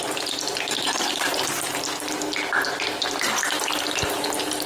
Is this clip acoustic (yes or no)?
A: yes